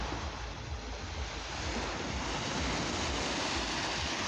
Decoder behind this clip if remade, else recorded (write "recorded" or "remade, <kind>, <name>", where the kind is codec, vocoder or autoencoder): recorded